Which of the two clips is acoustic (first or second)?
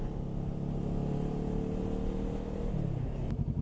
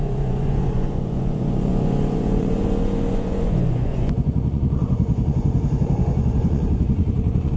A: first